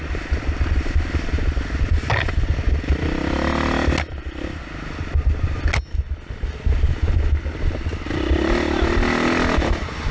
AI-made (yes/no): no